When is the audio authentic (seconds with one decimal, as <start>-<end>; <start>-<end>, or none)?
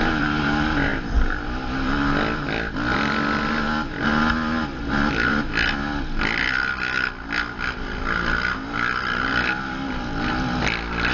0.0-11.1